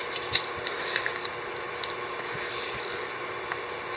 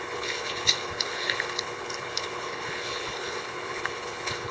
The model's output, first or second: second